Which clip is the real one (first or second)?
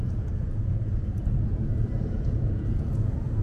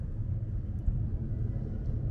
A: second